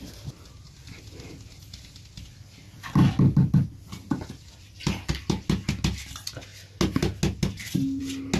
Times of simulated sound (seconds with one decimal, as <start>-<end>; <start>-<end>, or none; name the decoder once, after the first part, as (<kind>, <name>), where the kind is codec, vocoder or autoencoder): none